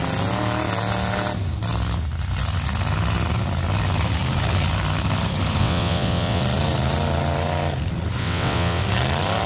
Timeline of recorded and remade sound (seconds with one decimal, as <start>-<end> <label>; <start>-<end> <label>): 0.0-5.6 recorded; 5.6-6.4 remade; 6.4-8.2 recorded; 8.2-8.8 remade; 8.8-9.5 recorded